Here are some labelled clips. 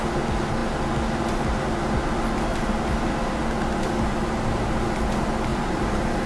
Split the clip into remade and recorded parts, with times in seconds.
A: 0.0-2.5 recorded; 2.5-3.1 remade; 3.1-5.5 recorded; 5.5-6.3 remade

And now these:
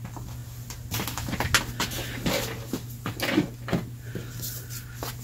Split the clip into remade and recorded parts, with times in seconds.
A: 0.0-5.2 recorded